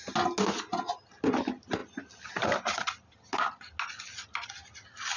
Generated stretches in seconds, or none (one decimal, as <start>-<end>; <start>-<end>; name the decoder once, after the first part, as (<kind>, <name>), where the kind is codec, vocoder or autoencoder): none